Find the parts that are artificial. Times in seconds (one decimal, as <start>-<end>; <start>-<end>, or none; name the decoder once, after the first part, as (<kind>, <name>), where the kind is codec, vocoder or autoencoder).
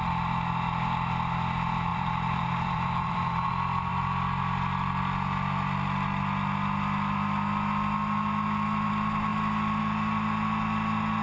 1.9-3.5 (vocoder, BigVGAN v2)